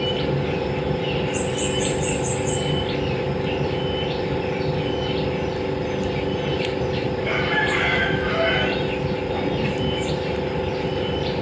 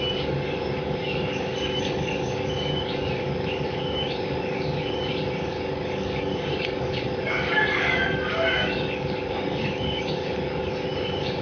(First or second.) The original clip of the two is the first